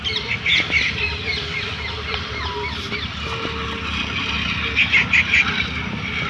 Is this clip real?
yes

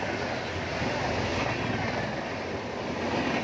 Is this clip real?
yes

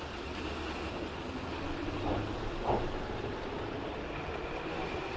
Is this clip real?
yes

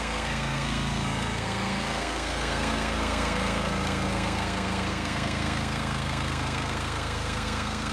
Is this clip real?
no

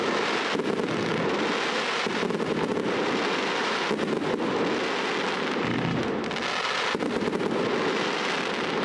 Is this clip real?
yes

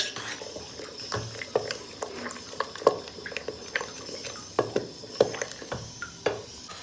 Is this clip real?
yes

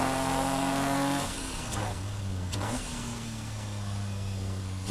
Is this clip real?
no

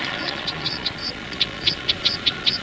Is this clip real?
no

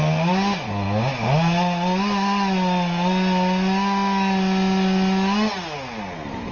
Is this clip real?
yes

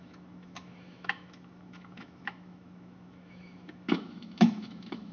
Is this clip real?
no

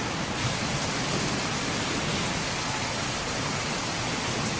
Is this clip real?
yes